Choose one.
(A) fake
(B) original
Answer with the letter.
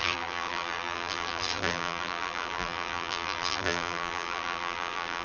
A